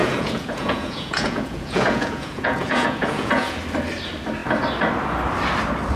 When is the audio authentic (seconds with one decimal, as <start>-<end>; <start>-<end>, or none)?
3.6-6.0